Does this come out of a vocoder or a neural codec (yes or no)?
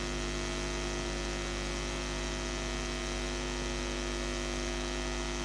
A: no